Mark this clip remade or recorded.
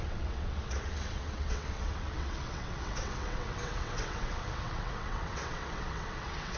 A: remade